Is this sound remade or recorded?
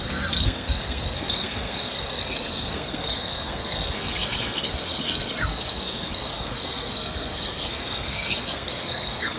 remade